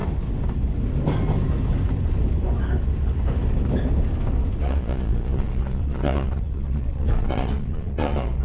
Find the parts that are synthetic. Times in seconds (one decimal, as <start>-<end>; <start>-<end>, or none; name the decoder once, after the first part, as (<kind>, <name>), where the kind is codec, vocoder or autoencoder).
4.6-8.4 (vocoder, Vocos)